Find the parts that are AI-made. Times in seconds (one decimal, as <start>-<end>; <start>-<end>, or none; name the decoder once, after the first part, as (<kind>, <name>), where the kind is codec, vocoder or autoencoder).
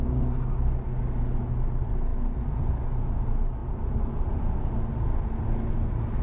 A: none